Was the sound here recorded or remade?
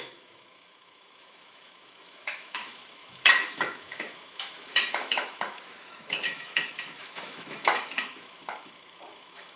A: remade